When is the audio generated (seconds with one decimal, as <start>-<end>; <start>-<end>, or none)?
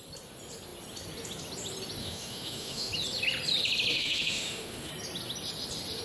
2.0-2.9; 3.9-4.9